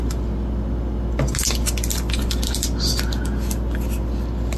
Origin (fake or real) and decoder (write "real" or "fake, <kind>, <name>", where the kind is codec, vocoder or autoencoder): real